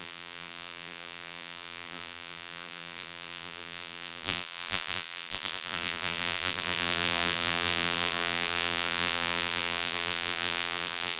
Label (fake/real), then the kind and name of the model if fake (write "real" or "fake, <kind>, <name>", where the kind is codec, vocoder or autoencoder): fake, vocoder, BigVGAN v2